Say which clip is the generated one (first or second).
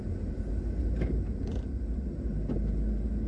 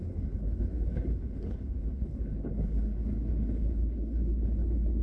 second